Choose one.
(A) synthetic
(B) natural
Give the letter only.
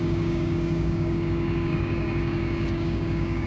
A